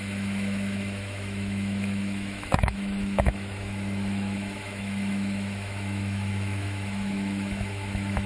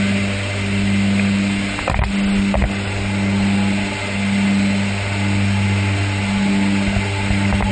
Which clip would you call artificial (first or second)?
first